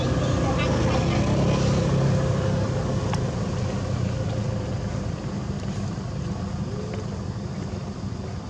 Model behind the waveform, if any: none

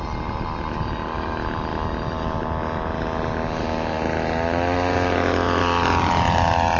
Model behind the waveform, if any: none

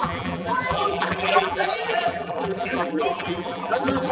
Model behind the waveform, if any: vocoder, BigVGAN v2